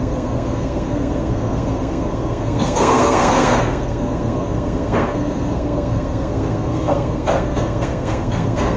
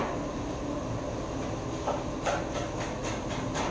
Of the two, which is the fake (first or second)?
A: first